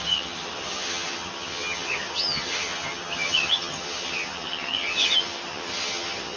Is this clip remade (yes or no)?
yes